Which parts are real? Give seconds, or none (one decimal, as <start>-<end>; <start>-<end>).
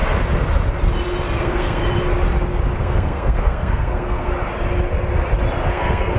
0.0-1.4; 1.8-2.8; 4.3-5.7